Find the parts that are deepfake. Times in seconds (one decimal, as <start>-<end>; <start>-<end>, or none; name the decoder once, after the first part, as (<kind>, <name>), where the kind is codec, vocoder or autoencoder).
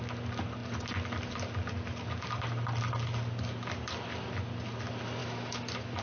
5.2-6.0 (autoencoder, DAC-VAE)